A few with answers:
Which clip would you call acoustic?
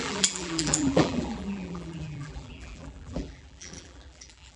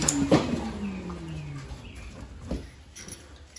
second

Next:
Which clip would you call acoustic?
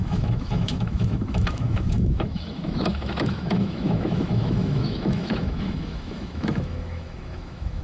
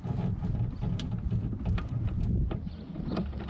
second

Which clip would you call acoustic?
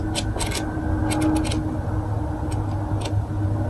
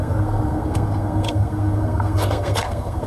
first